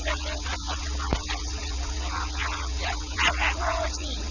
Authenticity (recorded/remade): remade